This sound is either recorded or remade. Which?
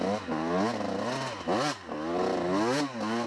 recorded